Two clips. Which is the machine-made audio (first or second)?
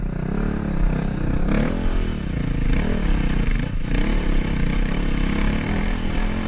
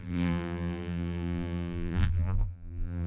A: second